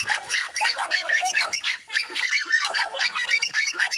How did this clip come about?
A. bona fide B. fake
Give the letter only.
B